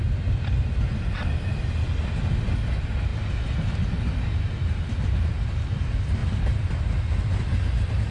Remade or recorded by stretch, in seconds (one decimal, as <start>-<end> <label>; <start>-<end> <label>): 0.0-8.1 recorded